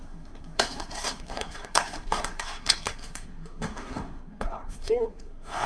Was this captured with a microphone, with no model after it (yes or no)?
no